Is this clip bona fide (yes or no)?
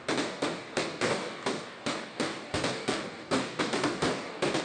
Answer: no